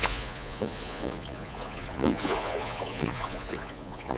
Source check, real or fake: fake